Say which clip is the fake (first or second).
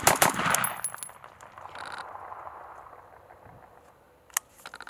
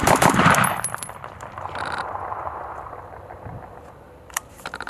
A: second